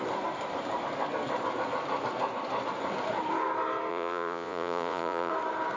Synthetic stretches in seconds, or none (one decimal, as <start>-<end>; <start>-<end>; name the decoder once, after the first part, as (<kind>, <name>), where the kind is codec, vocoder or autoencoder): 3.9-5.3 (vocoder, Vocos)